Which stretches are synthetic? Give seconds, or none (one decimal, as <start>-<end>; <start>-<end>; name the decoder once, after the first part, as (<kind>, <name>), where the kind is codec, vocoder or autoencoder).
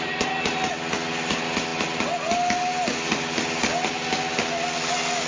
none